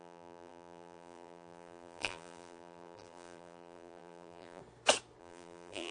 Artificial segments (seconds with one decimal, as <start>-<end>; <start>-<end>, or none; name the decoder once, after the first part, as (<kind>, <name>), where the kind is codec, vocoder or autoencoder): 0.0-4.6 (vocoder, BigVGAN v2); 5.2-5.9